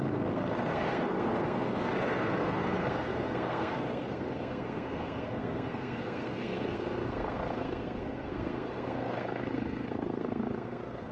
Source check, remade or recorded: remade